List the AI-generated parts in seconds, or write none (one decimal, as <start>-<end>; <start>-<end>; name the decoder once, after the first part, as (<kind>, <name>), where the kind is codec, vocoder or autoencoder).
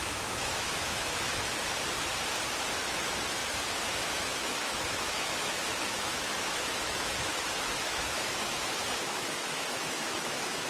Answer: 0.0-1.3 (autoencoder, DAC-VAE); 2.9-10.7